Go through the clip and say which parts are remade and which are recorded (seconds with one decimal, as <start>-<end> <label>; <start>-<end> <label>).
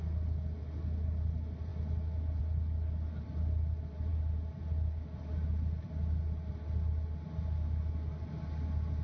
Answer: 0.0-9.0 recorded